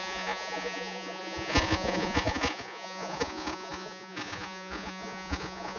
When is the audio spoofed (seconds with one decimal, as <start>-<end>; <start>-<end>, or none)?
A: 0.0-5.8